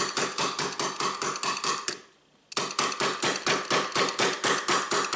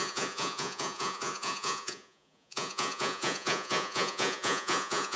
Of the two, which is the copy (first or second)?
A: second